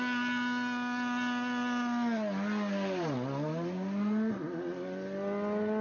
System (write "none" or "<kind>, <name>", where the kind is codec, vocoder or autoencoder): none